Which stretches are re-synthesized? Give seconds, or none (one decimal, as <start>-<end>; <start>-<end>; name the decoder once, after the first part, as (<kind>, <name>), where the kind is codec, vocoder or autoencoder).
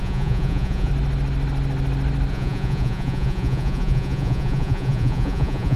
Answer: 0.0-0.9 (vocoder, Vocos); 2.3-5.8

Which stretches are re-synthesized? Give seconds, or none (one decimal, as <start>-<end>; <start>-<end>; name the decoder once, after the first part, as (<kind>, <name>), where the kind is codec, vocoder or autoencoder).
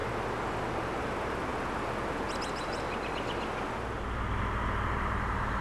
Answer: 0.6-1.5 (vocoder, BigVGAN v2); 4.4-5.6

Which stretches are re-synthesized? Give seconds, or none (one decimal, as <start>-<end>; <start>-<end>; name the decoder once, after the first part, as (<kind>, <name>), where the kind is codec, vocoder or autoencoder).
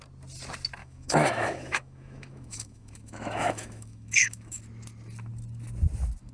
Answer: 0.8-4.6 (autoencoder, DAC-VAE)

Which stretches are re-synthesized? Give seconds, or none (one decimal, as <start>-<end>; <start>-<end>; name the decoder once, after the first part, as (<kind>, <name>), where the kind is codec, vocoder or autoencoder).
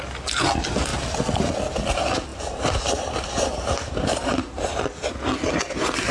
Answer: 2.3-4.8 (vocoder, BigVGAN v2)